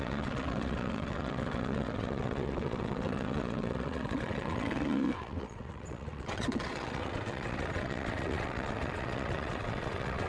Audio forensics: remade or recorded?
remade